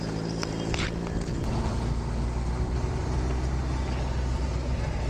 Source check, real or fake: real